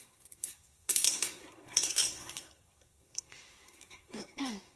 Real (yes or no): no